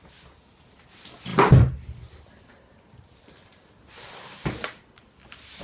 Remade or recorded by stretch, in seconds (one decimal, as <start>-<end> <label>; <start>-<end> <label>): 0.0-5.6 recorded